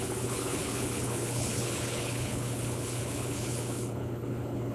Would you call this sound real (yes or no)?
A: no